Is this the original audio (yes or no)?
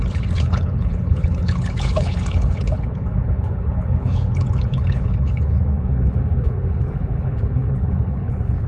no